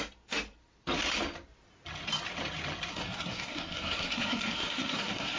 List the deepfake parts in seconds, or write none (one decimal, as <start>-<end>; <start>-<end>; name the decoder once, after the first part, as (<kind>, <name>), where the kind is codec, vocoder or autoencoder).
2.9-5.4 (codec, SNAC)